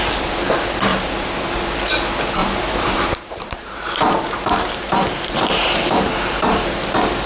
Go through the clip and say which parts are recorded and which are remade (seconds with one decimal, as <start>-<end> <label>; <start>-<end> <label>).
0.0-0.9 recorded; 0.9-1.5 remade; 1.5-2.4 recorded; 2.4-6.8 remade; 6.8-7.3 recorded